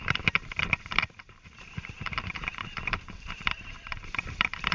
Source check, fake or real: fake